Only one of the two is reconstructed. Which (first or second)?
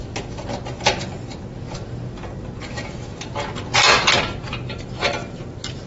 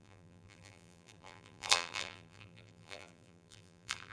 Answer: second